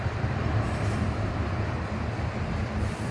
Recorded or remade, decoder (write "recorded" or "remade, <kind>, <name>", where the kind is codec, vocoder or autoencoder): recorded